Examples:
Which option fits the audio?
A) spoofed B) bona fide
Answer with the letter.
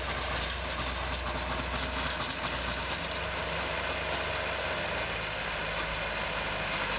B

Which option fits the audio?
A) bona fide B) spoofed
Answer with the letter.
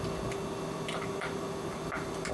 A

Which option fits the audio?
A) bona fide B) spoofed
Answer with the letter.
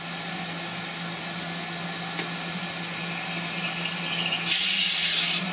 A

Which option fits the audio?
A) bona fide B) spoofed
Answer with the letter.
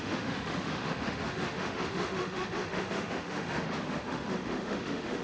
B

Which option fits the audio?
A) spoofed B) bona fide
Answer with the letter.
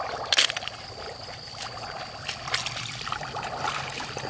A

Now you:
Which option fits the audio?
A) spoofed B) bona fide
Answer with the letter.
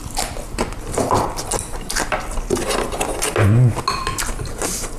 B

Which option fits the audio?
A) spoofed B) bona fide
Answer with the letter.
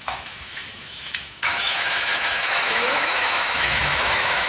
A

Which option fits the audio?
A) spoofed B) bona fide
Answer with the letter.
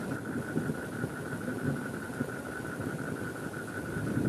B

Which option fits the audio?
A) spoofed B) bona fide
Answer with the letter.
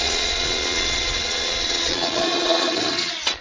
A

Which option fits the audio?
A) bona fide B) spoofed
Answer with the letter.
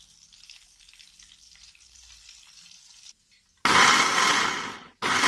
A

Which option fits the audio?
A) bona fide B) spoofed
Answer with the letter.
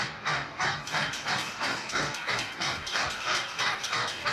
B